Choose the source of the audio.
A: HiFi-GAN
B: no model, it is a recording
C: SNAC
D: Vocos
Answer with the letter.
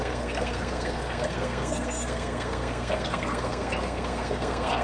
C